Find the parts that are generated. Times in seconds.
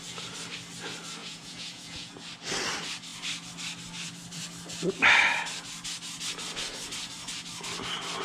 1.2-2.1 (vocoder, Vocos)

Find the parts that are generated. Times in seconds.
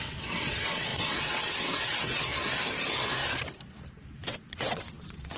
0.0-2.3 (vocoder, WaveNeXt); 4.2-5.4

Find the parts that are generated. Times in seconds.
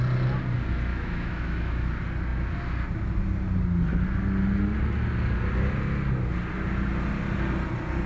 0.9-1.9 (autoencoder, DAC-VAE)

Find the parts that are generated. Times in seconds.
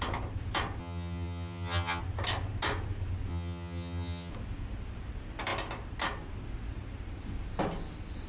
0.8-2.0 (vocoder, HiFi-GAN); 3.3-4.3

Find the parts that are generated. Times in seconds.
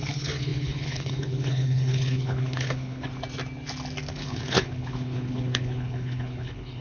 0.0-3.1 (codec, HILCodec); 4.1-6.8